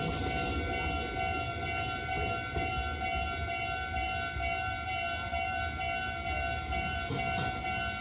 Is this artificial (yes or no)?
no